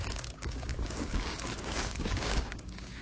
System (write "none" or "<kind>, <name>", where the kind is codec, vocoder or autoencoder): codec, DAC